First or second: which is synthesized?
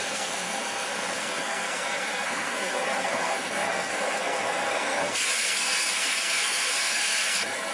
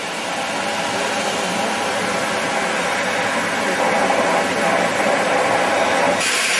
first